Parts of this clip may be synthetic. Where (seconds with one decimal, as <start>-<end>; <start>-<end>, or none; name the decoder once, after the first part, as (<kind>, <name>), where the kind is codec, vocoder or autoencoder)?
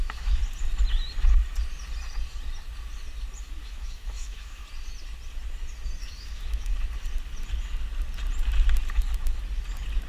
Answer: 0.0-0.4 (autoencoder, DAC-VAE); 3.5-4.6; 6.0-6.7